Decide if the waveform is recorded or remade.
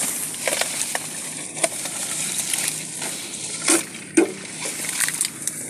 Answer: recorded